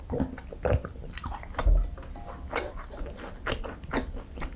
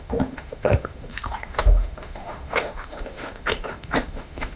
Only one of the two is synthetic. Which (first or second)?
second